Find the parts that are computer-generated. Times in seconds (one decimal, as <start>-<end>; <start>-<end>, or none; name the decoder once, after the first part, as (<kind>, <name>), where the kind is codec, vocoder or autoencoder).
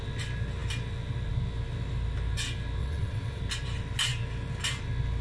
2.8-3.4 (vocoder, WaveNeXt)